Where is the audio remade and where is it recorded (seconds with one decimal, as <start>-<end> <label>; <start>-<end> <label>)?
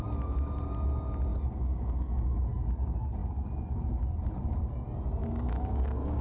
0.0-1.3 recorded; 1.3-2.4 remade; 2.4-5.2 recorded; 5.2-6.2 remade